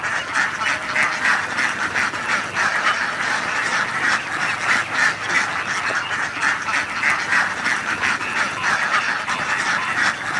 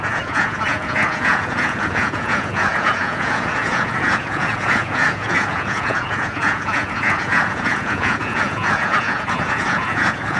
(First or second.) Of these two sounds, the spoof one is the second